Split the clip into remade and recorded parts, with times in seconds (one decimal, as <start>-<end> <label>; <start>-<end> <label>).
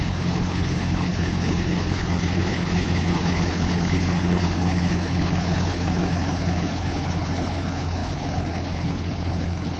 0.0-9.8 remade